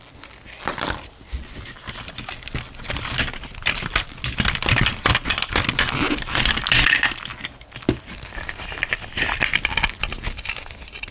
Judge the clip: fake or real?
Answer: real